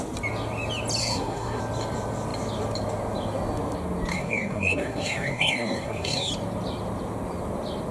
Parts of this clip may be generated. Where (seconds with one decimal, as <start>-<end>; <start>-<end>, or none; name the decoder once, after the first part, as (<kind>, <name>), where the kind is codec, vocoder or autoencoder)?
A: 1.0-1.6 (codec, SNAC); 4.1-6.3